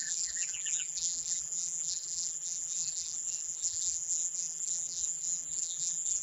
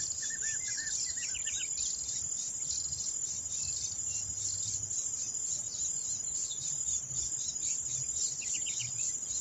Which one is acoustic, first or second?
second